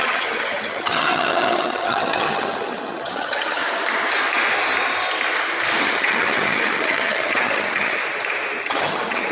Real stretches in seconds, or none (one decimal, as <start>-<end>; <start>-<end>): 3.6-5.8; 8.0-8.6